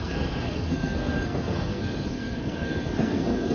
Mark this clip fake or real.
fake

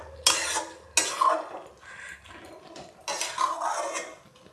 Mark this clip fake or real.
real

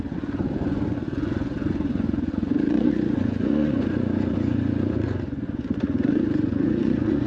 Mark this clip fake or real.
fake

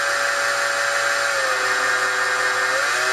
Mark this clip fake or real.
real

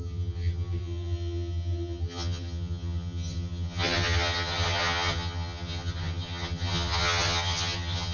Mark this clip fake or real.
fake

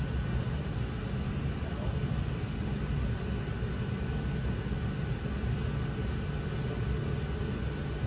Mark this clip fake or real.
real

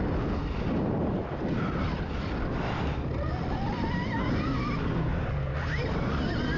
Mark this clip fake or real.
real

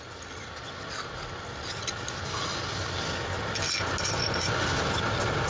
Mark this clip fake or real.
real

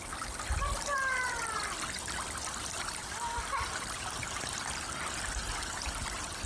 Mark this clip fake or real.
real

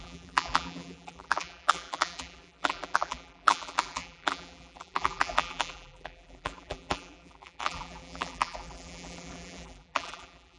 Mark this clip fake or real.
fake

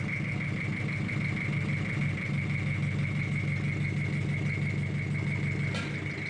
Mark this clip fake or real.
real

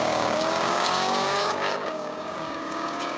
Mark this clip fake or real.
fake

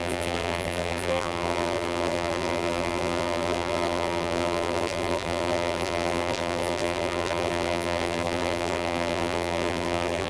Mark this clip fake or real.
fake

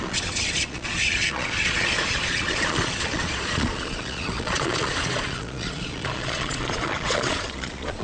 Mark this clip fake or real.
fake